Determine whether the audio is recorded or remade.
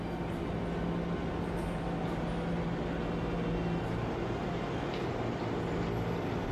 recorded